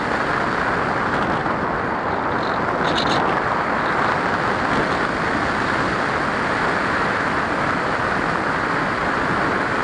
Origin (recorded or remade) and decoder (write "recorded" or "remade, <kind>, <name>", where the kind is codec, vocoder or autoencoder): recorded